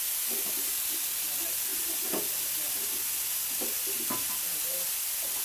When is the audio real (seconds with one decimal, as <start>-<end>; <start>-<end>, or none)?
0.0-5.4